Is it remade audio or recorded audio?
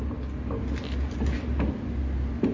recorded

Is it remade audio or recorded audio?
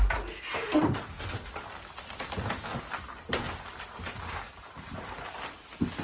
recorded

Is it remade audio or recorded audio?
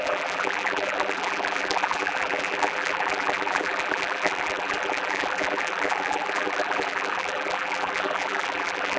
remade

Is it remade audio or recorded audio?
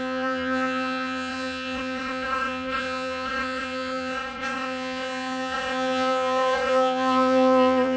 remade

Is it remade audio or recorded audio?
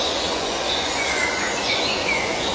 remade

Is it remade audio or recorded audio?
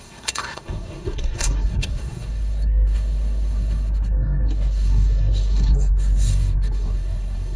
remade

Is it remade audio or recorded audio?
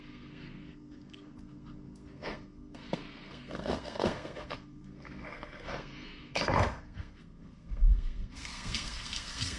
remade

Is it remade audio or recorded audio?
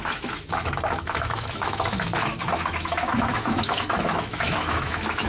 remade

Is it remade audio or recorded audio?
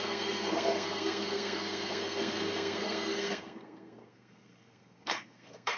remade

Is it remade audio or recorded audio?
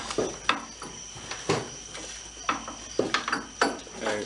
recorded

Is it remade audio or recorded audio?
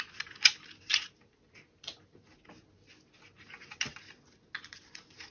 recorded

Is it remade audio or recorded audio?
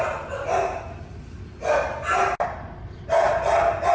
recorded